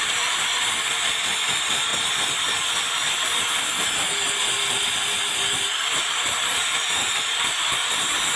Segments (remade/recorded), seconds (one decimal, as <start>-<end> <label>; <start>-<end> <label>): 0.0-8.4 recorded